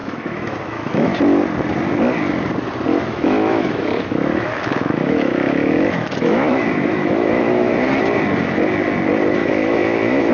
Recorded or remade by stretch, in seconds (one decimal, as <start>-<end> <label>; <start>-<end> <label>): 0.0-1.2 remade; 1.2-2.9 recorded; 2.9-7.7 remade; 7.7-9.4 recorded; 9.4-10.3 remade